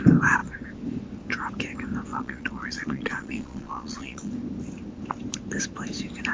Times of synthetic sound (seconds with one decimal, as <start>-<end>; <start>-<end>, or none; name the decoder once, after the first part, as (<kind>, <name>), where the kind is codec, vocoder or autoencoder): 2.1-4.3 (vocoder, Vocos)